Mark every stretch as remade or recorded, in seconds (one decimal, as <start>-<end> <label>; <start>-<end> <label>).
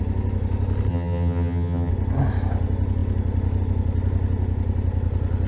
0.0-0.9 recorded; 0.9-1.9 remade; 1.9-5.5 recorded